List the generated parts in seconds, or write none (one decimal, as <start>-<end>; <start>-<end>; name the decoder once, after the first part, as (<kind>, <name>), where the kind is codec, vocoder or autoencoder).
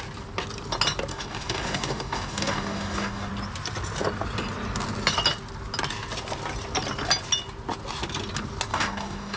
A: 1.1-3.3 (codec, DAC); 8.7-9.4